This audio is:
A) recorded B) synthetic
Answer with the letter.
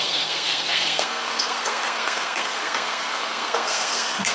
B